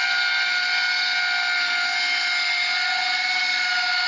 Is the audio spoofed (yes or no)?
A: no